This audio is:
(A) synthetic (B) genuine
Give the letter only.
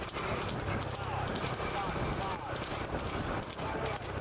B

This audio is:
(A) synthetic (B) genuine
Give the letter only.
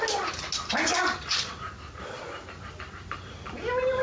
B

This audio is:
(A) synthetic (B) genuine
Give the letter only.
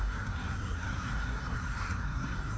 A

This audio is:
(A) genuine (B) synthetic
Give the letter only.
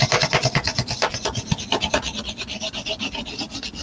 A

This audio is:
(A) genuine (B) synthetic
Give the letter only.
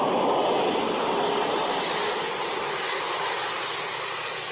A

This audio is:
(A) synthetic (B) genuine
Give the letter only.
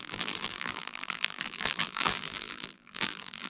A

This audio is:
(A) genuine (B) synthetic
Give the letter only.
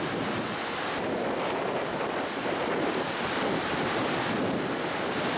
A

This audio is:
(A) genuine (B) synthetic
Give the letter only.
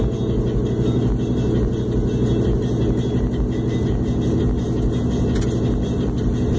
A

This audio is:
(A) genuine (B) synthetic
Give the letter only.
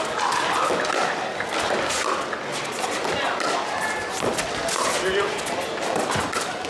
A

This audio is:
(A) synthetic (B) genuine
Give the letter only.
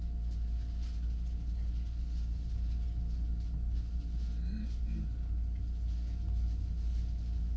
B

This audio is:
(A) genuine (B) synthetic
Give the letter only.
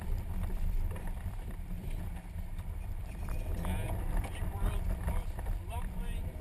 B